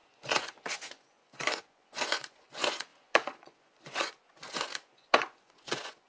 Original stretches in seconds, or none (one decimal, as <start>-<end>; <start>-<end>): none